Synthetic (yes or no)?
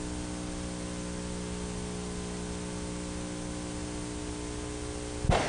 no